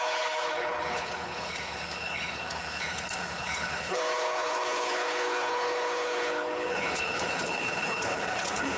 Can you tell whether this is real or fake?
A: fake